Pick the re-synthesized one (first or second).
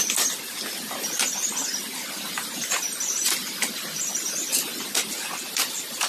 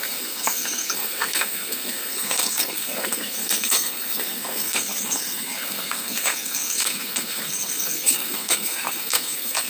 second